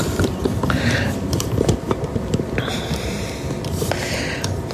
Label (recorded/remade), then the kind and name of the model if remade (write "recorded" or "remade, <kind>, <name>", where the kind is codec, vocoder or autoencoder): remade, vocoder, BigVGAN v2